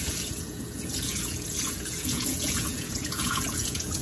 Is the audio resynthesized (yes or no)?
yes